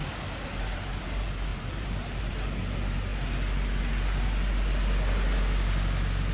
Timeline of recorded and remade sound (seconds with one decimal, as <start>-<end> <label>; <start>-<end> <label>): 0.0-0.9 remade; 0.9-1.5 recorded; 1.5-2.3 remade; 2.3-6.3 recorded